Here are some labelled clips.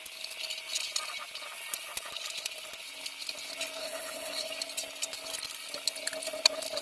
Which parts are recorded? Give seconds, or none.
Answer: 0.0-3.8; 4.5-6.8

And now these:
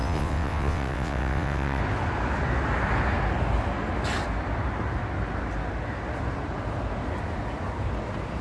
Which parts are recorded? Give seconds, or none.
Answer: 1.8-8.4

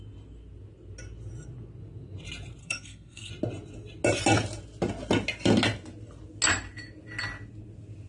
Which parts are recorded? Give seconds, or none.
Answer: 0.0-2.6; 3.3-8.1

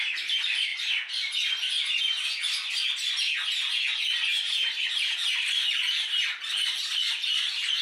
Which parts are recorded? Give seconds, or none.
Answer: 0.0-4.3; 5.9-7.8

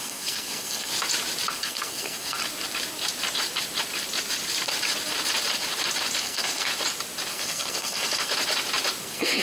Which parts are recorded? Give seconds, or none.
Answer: 0.9-1.5; 2.4-6.2; 6.7-7.3; 8.3-9.0